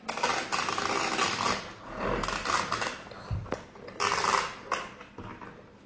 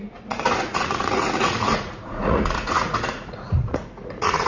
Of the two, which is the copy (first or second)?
second